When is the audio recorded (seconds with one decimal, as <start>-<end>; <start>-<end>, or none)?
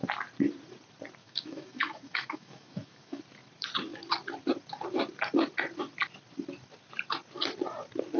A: 0.0-1.2; 3.2-8.2